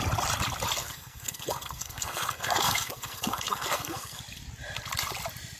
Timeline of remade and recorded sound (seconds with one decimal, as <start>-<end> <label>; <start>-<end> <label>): 0.0-0.8 recorded; 0.8-4.2 remade; 4.2-5.6 recorded